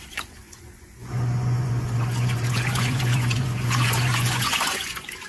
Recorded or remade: remade